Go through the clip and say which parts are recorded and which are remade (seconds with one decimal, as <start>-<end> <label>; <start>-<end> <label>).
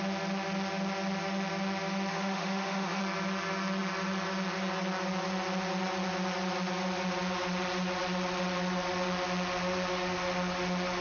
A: 0.0-2.1 recorded; 2.1-3.0 remade; 3.0-11.0 recorded